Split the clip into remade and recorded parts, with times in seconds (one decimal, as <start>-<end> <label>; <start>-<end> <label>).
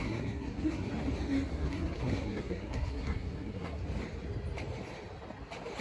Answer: 0.0-0.9 remade; 0.9-1.5 recorded; 1.5-3.8 remade; 3.8-5.8 recorded